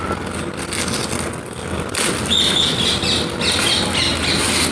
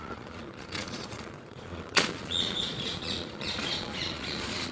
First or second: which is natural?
first